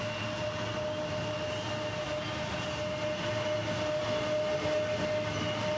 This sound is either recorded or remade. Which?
recorded